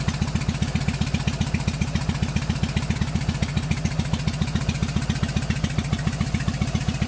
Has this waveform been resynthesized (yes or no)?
no